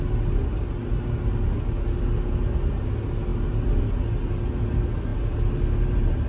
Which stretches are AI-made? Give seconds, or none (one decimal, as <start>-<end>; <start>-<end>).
none